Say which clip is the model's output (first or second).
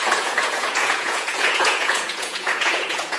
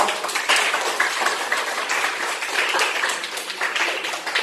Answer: first